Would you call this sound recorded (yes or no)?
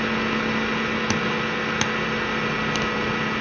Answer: yes